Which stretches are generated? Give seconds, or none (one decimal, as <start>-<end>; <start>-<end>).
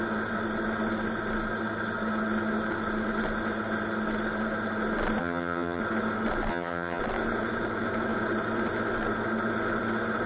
5.2-5.8; 6.5-7.0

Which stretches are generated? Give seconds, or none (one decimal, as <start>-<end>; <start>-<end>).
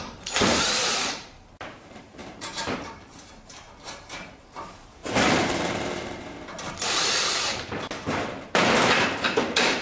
0.0-9.8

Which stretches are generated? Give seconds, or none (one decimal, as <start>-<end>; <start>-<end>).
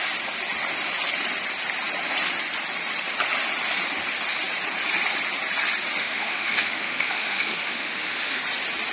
6.0-8.4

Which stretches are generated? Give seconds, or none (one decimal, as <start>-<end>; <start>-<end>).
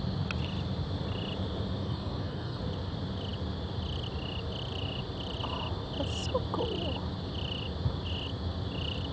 1.8-2.6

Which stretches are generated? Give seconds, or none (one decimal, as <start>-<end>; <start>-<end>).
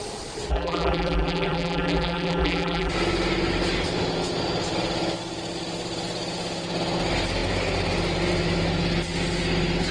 0.5-2.9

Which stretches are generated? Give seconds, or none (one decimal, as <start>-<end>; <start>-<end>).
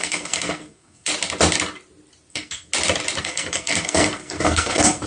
0.0-1.1; 2.3-2.7; 3.2-5.1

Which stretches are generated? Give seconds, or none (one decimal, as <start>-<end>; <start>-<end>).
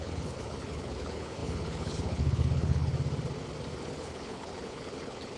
0.0-2.9; 3.8-5.4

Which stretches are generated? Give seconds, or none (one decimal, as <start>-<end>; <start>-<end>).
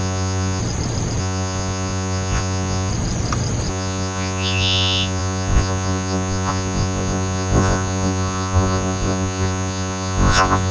0.0-0.6; 1.2-2.9; 3.7-10.7